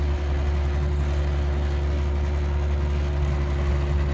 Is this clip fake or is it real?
real